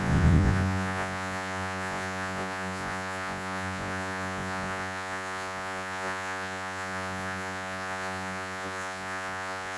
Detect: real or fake fake